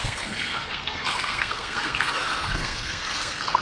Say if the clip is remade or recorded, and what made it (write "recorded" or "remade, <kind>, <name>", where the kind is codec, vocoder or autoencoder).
remade, codec, SNAC